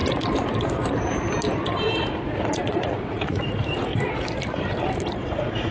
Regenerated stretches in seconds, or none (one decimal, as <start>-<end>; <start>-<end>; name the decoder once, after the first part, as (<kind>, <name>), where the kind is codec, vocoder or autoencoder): 2.0-3.9 (vocoder, Vocos); 5.2-5.7